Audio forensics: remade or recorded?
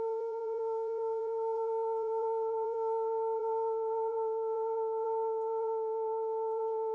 remade